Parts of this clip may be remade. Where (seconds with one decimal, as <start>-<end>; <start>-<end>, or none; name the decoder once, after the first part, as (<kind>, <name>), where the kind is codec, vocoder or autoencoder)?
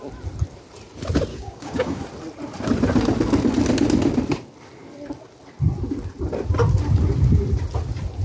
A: 1.3-2.0 (codec, DAC)